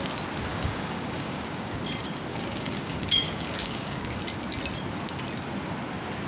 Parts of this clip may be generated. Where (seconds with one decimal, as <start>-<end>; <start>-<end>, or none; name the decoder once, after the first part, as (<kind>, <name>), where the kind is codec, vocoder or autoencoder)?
0.5-1.8 (codec, DAC); 2.3-4.2